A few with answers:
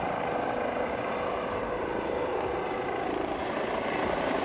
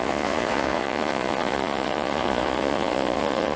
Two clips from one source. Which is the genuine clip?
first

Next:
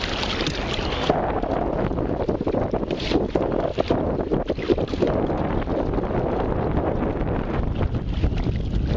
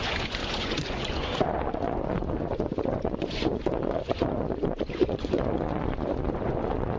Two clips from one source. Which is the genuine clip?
first